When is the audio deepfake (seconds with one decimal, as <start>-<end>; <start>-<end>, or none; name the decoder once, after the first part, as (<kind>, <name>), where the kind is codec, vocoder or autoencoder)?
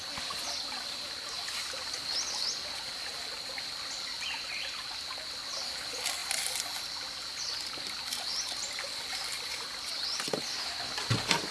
none